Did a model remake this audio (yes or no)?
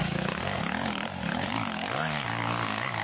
yes